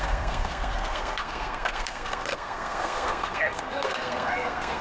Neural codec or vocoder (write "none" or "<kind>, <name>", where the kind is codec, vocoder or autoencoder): codec, SNAC